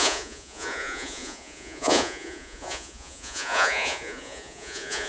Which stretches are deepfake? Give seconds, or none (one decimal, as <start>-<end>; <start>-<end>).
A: 0.0-5.1